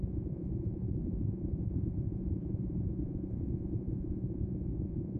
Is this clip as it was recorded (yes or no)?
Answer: no